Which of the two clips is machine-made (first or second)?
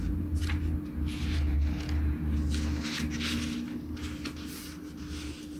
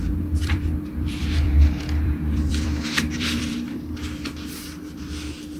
second